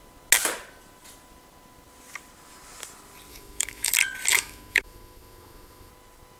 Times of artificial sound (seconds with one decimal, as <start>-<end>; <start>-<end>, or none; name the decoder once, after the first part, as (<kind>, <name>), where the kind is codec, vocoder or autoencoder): 3.3-3.9 (autoencoder, DAC-VAE); 4.3-5.9